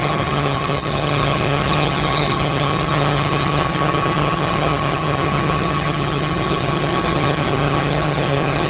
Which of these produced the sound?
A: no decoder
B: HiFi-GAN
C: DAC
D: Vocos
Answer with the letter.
B